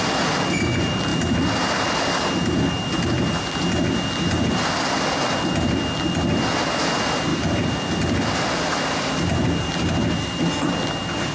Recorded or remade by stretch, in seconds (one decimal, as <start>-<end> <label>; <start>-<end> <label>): 0.0-11.3 recorded